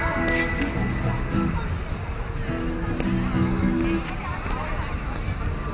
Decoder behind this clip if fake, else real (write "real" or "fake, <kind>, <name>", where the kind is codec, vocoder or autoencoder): real